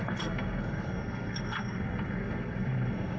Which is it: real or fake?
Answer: fake